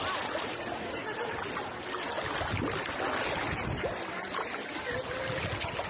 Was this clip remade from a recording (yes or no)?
no